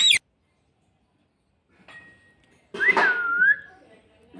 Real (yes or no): yes